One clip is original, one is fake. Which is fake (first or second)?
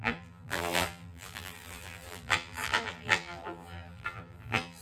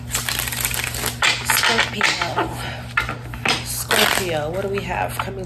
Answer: first